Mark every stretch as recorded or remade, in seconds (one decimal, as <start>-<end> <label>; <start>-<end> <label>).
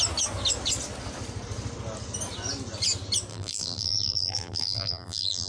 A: 0.0-3.3 recorded; 3.3-5.5 remade